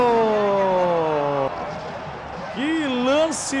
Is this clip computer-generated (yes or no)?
no